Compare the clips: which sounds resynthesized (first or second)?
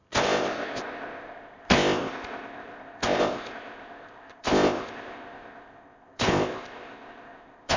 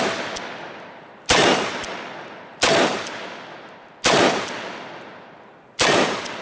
first